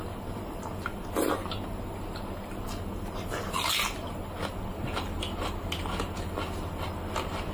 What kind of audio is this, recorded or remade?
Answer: recorded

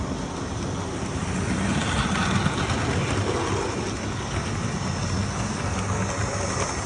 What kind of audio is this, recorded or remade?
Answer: recorded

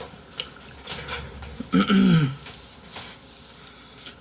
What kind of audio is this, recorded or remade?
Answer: recorded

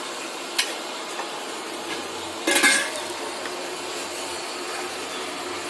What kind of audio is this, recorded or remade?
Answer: recorded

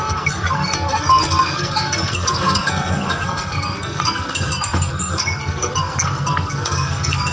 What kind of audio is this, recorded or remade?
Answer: remade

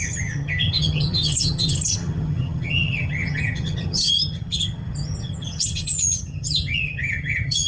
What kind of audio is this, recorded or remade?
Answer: remade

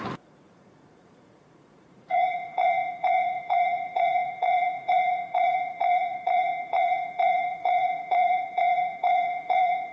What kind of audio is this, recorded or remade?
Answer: remade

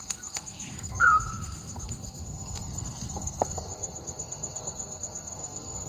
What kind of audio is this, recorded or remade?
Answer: remade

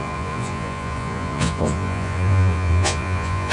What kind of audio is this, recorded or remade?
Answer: remade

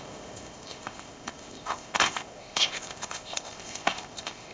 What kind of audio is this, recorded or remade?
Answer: remade